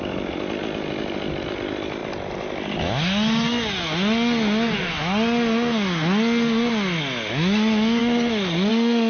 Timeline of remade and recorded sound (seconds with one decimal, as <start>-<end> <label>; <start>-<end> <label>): 0.0-9.1 recorded